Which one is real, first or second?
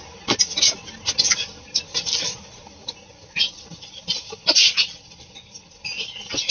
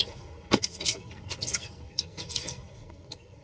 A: first